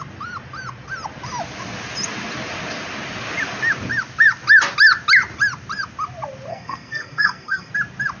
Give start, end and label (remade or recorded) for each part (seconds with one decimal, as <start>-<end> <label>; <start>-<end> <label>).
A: 0.0-6.5 recorded; 6.5-7.7 remade; 7.7-8.2 recorded

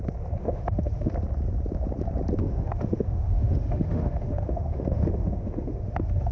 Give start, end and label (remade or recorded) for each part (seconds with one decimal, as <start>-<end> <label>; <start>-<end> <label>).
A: 0.0-0.4 recorded; 0.4-1.1 remade; 1.1-2.4 recorded; 2.4-6.3 remade

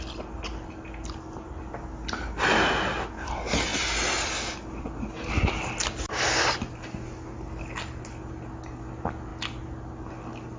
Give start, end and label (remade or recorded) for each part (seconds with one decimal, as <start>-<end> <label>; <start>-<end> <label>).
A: 0.0-10.6 recorded

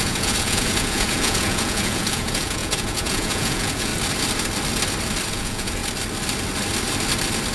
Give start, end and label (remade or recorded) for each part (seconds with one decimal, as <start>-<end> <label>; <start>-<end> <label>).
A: 0.0-3.9 remade; 3.9-5.3 recorded; 5.3-5.8 remade; 5.8-7.5 recorded

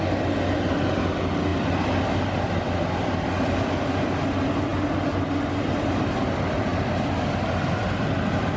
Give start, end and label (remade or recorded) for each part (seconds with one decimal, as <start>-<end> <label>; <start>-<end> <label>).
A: 0.0-8.6 recorded

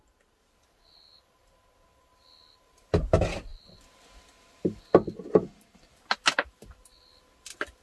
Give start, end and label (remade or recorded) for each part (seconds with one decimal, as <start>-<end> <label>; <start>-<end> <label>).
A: 0.0-7.8 recorded

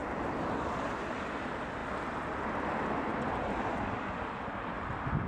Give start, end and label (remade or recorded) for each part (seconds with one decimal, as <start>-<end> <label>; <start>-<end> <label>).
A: 0.0-5.3 remade